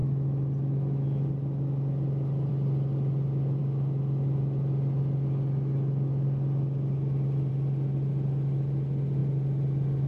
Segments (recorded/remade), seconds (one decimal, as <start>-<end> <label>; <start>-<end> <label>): 0.0-10.1 recorded